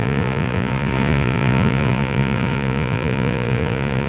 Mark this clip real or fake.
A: fake